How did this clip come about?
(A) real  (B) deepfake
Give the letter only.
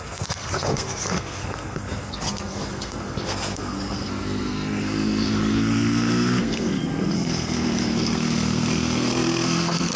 B